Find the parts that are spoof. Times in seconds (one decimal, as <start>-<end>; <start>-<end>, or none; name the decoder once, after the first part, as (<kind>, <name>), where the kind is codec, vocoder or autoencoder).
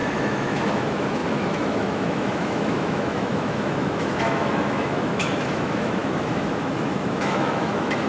0.0-8.1 (autoencoder, DAC-VAE)